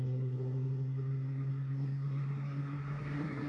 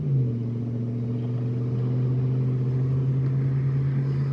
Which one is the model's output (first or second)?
first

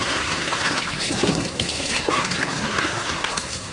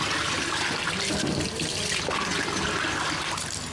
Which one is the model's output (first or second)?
first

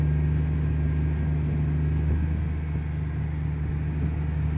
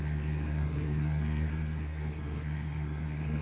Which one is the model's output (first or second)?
second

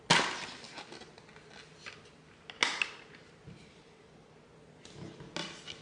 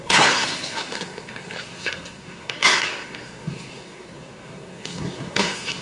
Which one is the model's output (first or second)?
second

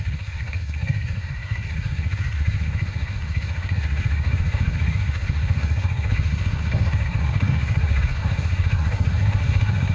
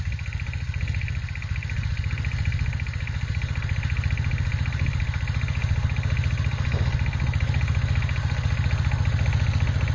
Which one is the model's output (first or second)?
first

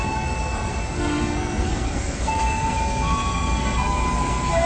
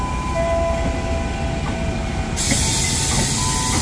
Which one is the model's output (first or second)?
first